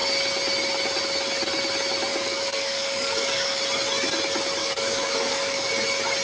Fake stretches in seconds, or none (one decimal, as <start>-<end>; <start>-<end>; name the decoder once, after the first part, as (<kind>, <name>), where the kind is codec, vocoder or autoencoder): 2.1-3.6 (codec, DAC); 4.6-5.7